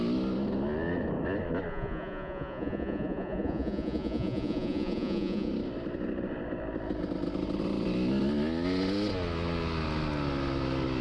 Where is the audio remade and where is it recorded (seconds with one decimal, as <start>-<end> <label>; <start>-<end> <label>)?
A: 0.0-1.7 recorded; 1.7-5.5 remade; 5.5-11.0 recorded